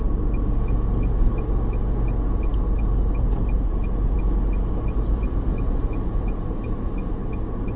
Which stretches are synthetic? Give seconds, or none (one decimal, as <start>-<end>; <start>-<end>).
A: 2.5-4.2